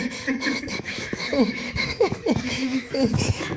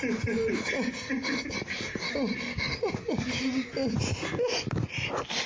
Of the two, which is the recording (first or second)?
second